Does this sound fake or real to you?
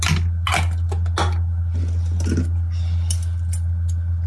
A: real